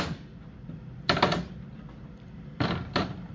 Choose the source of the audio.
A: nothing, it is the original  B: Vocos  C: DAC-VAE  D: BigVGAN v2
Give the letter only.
A